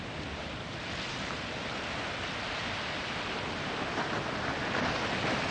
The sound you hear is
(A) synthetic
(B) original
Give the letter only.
B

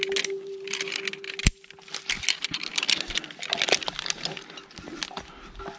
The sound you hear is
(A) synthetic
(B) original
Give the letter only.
B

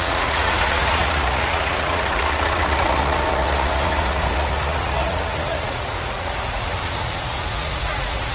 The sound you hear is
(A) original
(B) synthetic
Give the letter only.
B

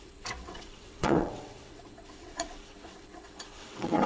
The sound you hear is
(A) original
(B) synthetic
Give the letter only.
B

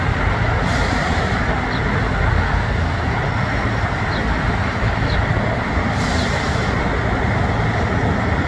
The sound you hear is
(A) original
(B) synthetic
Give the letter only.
A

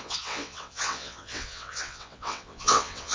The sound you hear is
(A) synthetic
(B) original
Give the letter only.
A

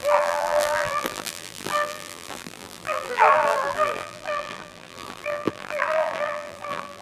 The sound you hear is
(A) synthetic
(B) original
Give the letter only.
A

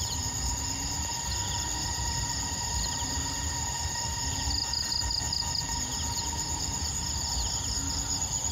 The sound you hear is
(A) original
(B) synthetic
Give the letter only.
A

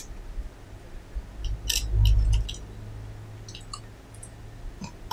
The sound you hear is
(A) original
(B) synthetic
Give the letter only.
A